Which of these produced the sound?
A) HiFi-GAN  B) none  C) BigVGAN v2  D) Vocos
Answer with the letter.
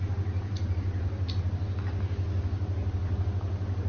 B